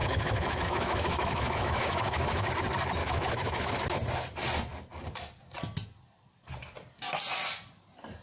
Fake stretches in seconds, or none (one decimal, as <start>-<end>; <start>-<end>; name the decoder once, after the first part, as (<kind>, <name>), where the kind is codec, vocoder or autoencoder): 0.0-2.5 (autoencoder, DAC-VAE); 3.0-3.7

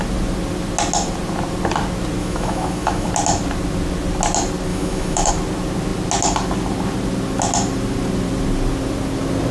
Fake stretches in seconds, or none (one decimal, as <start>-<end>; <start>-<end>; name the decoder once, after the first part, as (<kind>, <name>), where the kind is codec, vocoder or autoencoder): 2.2-3.1 (autoencoder, DAC-VAE); 4.7-5.3